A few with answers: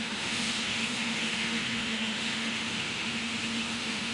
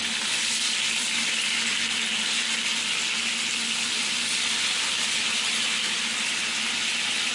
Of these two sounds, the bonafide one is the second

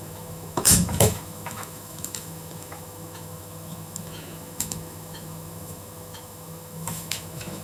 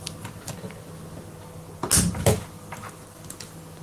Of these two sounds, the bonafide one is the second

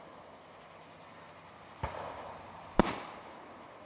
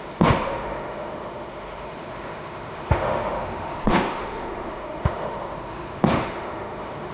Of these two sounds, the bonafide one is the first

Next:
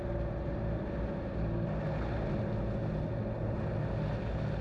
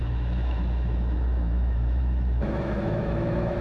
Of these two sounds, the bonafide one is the first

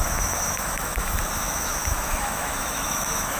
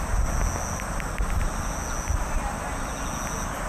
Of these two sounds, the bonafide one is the second